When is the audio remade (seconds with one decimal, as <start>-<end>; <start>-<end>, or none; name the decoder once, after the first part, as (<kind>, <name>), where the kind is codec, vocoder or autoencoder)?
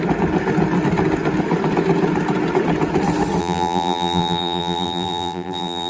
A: 3.4-5.9 (vocoder, BigVGAN v2)